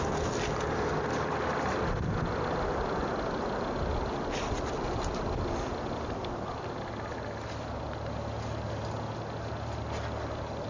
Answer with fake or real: real